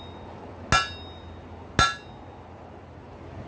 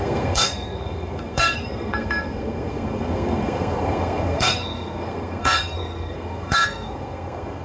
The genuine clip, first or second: first